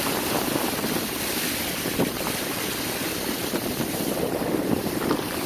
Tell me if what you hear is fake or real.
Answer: real